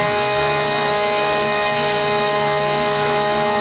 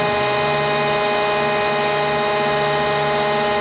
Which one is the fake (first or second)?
first